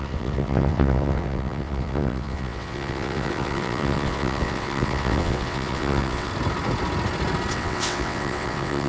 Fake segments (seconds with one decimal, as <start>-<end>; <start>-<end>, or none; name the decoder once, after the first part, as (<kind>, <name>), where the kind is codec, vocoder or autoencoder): 0.0-6.3 (vocoder, WaveNeXt); 7.5-8.9